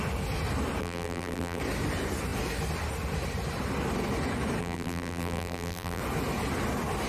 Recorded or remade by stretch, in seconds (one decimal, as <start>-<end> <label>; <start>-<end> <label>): 0.0-0.8 recorded; 0.8-1.6 remade; 1.6-4.6 recorded; 4.6-6.0 remade; 6.0-7.1 recorded